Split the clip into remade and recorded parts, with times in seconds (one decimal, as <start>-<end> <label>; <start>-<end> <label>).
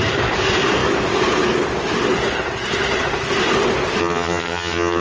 0.0-4.0 recorded; 4.0-5.0 remade